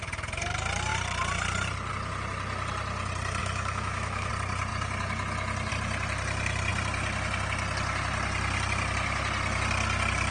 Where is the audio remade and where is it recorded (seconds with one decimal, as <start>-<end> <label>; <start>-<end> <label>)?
0.0-3.4 recorded; 3.4-4.3 remade; 4.3-10.3 recorded